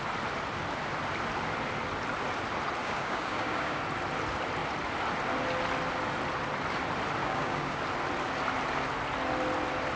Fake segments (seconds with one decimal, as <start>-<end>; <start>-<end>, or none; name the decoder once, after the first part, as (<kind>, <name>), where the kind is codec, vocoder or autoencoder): 2.8-3.8 (codec, DAC); 7.2-7.8